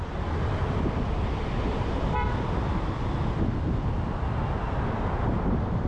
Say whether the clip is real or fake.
fake